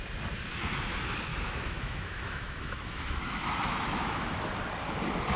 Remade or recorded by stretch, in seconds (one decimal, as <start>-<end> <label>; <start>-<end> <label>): 0.0-1.3 recorded; 1.3-4.5 remade; 4.5-5.4 recorded